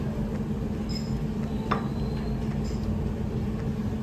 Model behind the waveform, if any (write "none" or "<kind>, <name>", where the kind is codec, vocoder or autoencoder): none